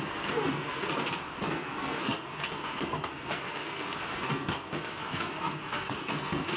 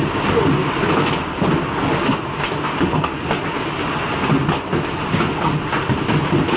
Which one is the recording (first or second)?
second